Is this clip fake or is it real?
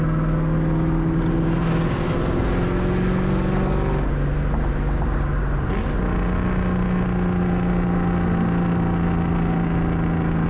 real